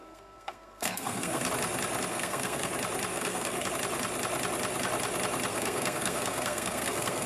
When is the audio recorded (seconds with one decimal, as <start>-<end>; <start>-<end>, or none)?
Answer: 1.5-2.1; 2.7-3.1; 3.7-5.5